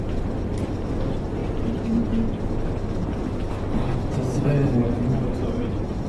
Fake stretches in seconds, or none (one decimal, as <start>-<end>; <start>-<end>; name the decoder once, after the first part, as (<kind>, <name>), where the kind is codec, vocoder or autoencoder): 4.8-6.1 (vocoder, BigVGAN v2)